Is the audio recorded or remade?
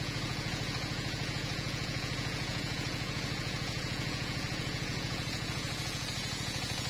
remade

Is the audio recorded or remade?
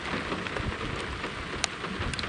recorded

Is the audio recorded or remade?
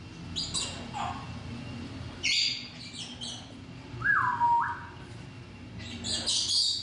recorded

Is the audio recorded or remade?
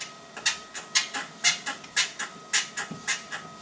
recorded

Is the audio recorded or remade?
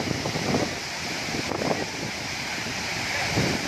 recorded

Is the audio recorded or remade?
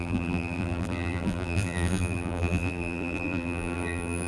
remade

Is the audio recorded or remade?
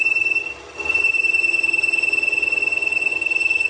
recorded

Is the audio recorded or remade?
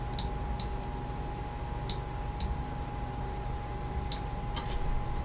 recorded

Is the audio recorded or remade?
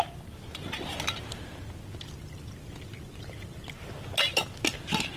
recorded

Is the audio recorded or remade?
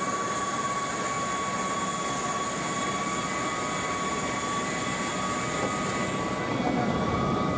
recorded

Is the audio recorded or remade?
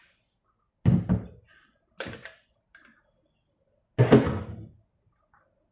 recorded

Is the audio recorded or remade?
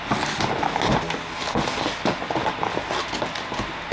recorded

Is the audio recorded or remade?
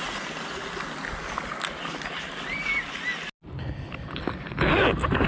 recorded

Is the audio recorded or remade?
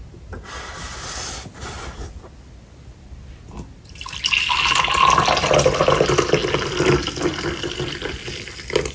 recorded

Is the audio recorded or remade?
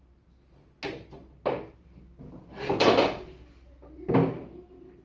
recorded